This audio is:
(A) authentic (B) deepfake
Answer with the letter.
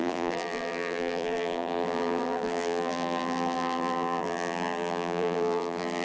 B